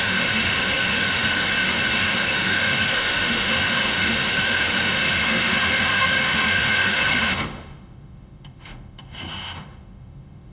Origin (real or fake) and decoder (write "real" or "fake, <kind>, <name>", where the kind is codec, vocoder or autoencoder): fake, autoencoder, DAC-VAE